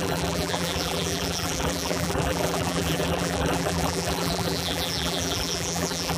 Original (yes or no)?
no